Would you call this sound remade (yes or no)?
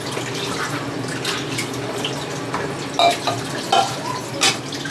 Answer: no